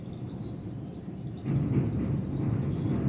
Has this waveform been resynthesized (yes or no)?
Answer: no